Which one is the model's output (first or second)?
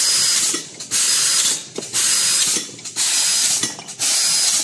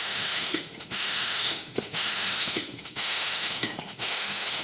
second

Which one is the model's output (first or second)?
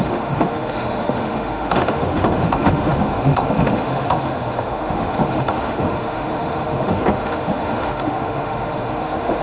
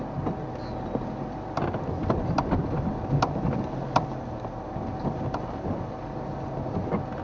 first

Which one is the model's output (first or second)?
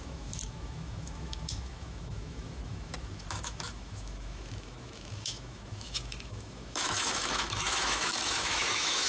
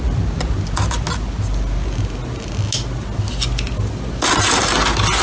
first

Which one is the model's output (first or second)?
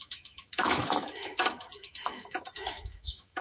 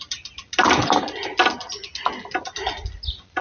first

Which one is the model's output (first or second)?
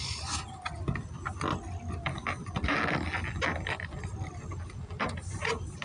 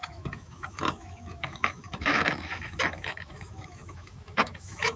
second